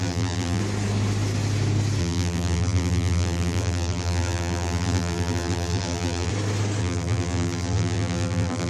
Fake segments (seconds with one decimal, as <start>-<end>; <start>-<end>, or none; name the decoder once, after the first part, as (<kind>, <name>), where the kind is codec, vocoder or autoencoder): 0.0-0.6 (vocoder, BigVGAN v2); 2.0-6.3; 6.8-8.7